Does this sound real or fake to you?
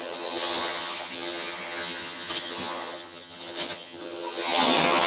fake